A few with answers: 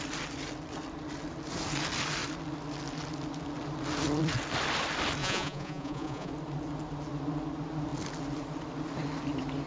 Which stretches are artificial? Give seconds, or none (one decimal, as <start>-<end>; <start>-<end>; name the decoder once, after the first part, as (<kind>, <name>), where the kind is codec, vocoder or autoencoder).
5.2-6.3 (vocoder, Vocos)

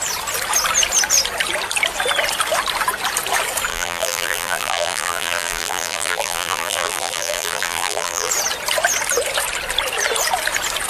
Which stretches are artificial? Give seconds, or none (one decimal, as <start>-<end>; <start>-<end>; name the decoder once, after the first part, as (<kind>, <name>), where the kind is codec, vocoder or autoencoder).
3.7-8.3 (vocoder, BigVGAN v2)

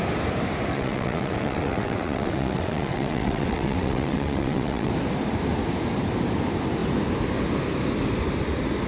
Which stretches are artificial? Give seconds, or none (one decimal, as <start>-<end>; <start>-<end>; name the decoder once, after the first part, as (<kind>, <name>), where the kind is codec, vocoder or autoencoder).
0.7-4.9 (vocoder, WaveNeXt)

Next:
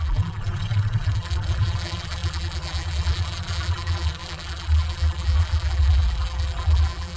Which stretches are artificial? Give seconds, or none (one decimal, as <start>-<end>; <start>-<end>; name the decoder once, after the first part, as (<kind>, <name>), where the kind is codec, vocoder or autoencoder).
0.0-7.2 (vocoder, BigVGAN v2)